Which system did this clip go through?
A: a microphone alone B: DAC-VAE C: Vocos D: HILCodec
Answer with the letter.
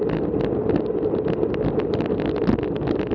A